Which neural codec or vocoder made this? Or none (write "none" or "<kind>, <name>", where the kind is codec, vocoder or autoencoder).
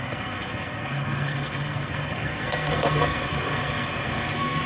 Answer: codec, SNAC